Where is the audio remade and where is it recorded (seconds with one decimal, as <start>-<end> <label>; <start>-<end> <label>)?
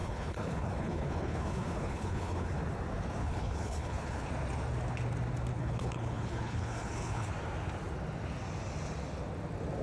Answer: 0.0-2.6 remade; 2.6-3.2 recorded; 3.2-4.3 remade; 4.3-5.5 recorded; 5.5-7.3 remade; 7.3-9.8 recorded